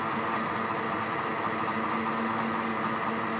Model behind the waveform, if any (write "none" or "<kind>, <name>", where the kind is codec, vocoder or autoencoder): none